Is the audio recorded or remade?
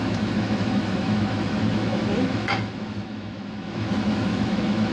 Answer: remade